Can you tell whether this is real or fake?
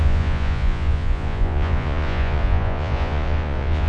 fake